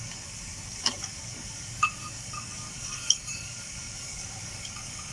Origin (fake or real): fake